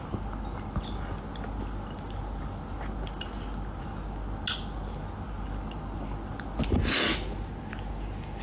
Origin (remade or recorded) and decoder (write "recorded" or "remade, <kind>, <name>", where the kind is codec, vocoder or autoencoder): recorded